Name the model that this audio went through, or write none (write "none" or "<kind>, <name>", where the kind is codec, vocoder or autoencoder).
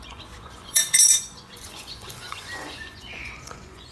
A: vocoder, Vocos